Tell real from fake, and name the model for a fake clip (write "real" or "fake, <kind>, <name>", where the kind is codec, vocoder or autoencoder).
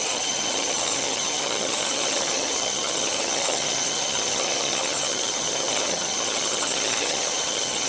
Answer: fake, vocoder, HiFi-GAN